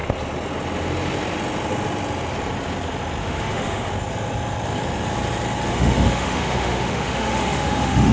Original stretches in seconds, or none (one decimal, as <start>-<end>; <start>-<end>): 0.0-3.2; 3.9-5.7